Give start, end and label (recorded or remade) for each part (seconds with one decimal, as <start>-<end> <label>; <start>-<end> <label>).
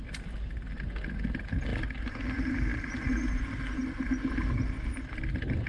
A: 0.0-5.7 recorded